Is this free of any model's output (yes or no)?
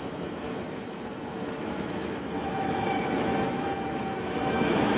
no